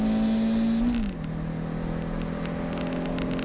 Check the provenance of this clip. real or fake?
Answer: real